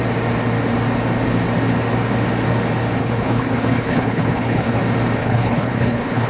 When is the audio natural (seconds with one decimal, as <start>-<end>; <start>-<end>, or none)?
0.0-3.0; 4.8-5.2